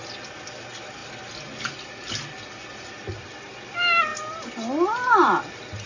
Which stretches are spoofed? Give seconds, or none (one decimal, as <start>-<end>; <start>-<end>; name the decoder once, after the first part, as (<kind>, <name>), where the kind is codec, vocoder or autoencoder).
none